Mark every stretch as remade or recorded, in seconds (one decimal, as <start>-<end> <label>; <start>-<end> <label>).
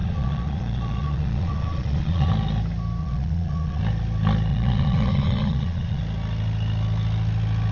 0.0-2.3 remade; 2.3-3.0 recorded; 3.0-3.8 remade; 3.8-4.5 recorded; 4.5-6.0 remade; 6.0-7.7 recorded